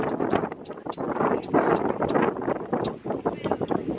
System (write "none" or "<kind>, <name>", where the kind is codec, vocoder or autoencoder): none